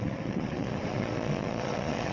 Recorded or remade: remade